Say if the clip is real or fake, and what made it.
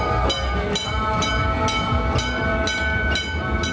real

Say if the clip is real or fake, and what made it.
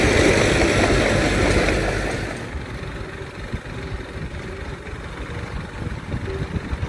real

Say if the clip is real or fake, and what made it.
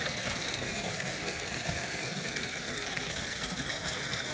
fake, codec, SNAC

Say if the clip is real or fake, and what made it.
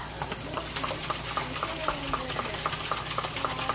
real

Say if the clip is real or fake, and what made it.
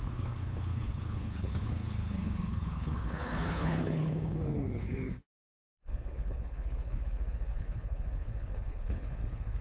fake, codec, HILCodec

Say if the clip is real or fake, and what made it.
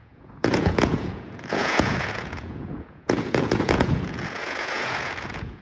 fake, vocoder, Vocos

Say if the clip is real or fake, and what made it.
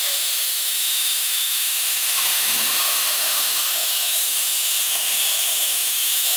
fake, autoencoder, DAC-VAE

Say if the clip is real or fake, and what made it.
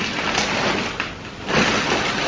real